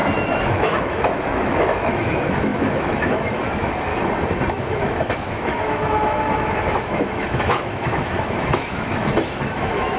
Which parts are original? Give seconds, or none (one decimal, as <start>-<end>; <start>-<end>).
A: 0.0-0.5; 3.9-4.5